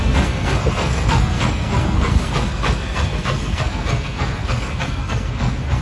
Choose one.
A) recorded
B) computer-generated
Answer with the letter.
B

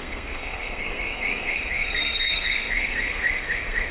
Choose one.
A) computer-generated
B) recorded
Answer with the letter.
A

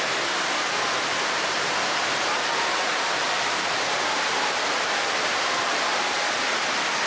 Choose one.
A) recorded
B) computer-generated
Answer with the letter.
A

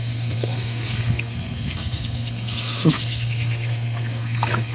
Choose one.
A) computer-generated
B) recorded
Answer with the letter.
A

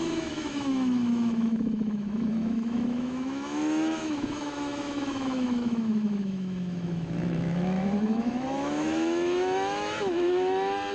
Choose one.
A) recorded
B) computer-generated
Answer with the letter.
B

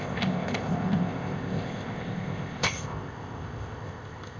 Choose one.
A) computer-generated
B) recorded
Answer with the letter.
A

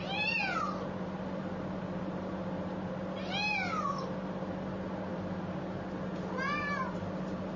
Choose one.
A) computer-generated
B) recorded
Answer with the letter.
B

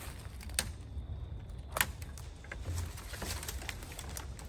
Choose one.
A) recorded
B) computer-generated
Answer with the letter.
A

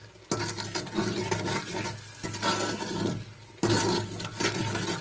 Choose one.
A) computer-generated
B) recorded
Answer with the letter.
B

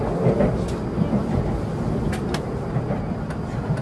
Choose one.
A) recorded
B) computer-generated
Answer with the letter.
A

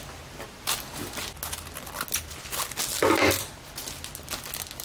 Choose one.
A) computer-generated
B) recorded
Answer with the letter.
B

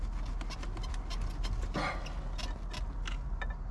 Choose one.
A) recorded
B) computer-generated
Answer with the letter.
A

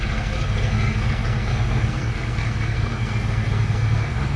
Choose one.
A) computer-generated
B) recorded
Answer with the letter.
A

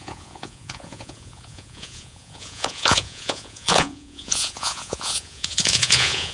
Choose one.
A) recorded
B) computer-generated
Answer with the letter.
B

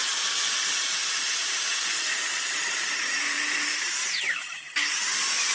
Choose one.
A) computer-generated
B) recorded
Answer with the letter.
A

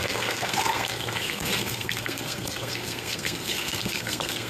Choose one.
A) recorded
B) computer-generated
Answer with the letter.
B